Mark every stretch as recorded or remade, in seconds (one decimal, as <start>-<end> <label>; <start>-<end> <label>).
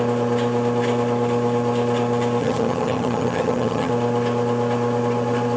0.0-2.4 recorded; 2.4-3.9 remade; 3.9-5.6 recorded